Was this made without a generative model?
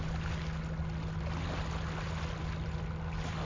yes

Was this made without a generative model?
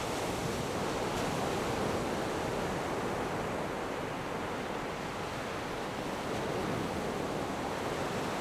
yes